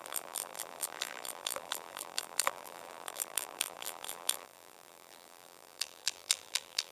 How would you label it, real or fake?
fake